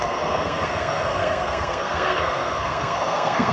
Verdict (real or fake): fake